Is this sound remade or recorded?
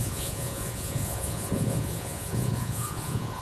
remade